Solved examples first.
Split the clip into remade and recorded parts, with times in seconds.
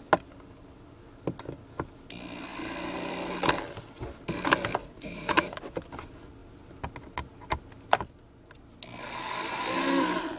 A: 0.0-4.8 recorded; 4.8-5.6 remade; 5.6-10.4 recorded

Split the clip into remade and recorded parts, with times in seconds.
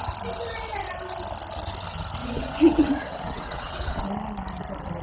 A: 0.0-2.2 recorded; 2.2-4.0 remade; 4.0-5.0 recorded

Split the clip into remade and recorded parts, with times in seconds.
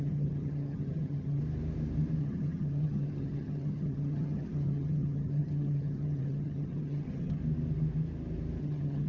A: 0.0-1.4 remade; 1.4-2.2 recorded; 2.2-7.4 remade; 7.4-8.6 recorded; 8.6-9.1 remade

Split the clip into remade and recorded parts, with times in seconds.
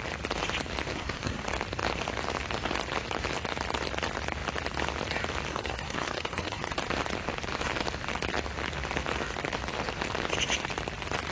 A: 0.0-0.9 recorded; 0.9-1.4 remade; 1.4-5.5 recorded; 5.5-6.7 remade; 6.7-11.3 recorded